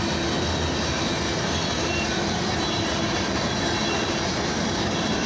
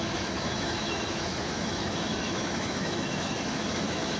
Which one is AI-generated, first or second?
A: second